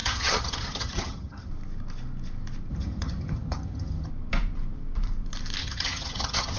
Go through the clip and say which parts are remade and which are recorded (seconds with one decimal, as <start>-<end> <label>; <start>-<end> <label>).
0.0-1.5 remade; 1.5-2.7 recorded; 2.7-4.1 remade; 4.1-5.6 recorded; 5.6-6.6 remade